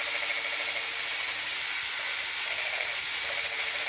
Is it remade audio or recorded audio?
recorded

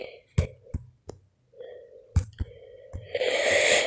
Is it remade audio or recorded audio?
recorded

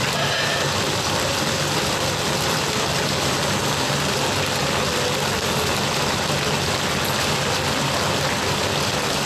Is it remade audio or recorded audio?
recorded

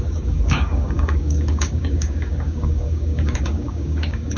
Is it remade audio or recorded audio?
remade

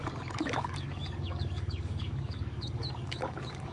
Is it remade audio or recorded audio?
remade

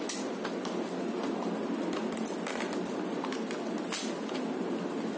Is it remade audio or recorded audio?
recorded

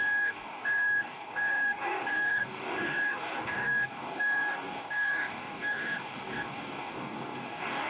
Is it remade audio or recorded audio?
remade